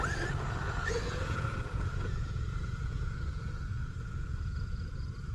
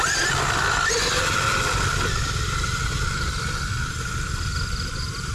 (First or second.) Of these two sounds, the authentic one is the second